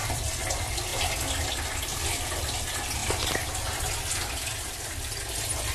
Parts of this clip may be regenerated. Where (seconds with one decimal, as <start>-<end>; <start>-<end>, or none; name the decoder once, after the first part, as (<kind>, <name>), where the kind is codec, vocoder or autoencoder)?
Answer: 0.0-0.9 (vocoder, BigVGAN v2); 2.0-3.0; 4.1-5.7